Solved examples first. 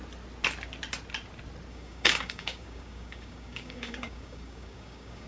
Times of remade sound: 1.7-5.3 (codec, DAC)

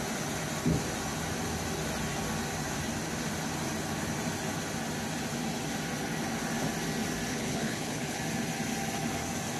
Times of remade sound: 7.3-8.2 (codec, HILCodec)

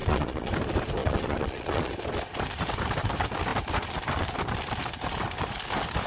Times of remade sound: 0.0-0.5 (vocoder, Vocos); 1.0-1.9

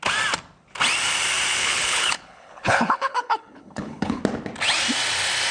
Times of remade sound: 1.6-4.2 (codec, HILCodec)